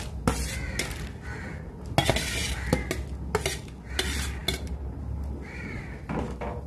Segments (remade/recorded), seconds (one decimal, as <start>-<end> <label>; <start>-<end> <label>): 0.0-6.7 recorded